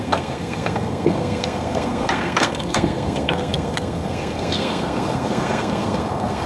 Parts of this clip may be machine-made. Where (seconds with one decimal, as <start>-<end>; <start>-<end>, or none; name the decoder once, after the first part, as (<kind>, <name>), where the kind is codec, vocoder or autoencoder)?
0.0-6.5 (codec, SNAC)